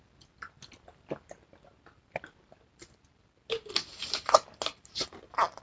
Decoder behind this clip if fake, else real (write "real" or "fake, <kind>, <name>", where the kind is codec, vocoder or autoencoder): real